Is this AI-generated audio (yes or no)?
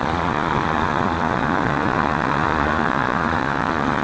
yes